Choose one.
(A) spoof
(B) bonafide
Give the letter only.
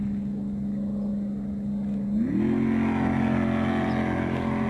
B